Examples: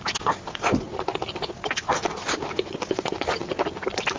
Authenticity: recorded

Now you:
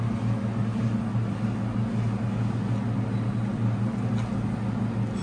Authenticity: recorded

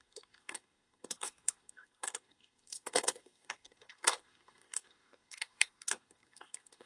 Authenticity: remade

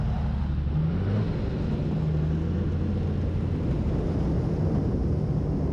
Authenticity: recorded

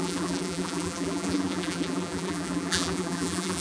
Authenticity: remade